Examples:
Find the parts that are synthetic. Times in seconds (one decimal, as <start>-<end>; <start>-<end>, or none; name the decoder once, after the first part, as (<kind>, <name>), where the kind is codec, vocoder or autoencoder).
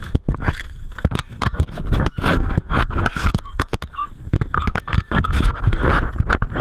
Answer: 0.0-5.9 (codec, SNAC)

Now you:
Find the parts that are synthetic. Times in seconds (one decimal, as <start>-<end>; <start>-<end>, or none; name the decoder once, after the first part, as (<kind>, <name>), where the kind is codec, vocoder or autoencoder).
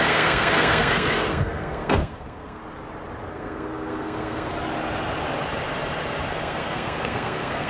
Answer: 0.0-2.6 (codec, SNAC); 3.3-4.5; 6.3-7.7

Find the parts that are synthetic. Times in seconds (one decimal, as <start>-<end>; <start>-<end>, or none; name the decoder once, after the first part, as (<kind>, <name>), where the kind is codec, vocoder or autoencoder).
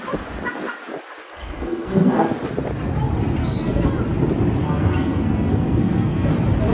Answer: 1.2-2.3 (codec, SNAC); 3.4-3.9; 4.6-6.3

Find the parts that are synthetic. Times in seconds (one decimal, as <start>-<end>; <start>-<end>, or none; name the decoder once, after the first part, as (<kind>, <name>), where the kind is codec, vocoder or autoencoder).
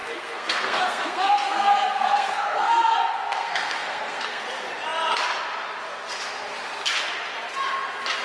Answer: 0.0-4.4 (codec, SNAC)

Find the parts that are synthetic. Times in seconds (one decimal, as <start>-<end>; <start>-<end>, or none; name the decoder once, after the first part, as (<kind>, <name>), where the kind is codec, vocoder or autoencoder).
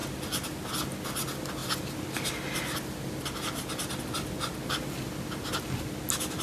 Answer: none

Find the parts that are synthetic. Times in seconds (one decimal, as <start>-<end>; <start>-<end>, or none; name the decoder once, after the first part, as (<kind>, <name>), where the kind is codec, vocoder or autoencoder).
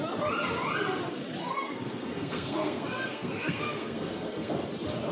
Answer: 1.4-4.5 (codec, SNAC)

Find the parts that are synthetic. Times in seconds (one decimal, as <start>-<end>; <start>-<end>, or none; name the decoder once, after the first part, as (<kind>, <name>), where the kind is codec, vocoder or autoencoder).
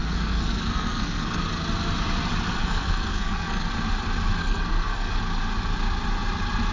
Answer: 0.0-1.4 (codec, SNAC); 2.6-3.7; 4.4-5.2